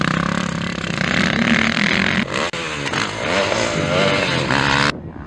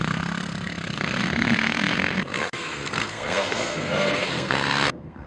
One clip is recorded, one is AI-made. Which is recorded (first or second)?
first